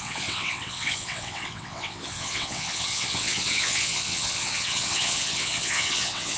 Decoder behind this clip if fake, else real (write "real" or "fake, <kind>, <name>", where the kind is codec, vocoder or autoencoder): fake, vocoder, WaveNeXt